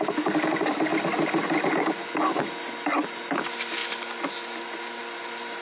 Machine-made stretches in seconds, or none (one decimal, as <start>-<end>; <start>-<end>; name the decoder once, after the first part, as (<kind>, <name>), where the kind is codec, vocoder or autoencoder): none